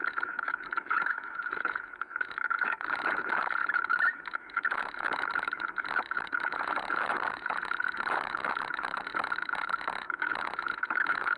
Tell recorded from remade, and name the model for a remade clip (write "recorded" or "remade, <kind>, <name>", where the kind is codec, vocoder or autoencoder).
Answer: remade, autoencoder, DAC-VAE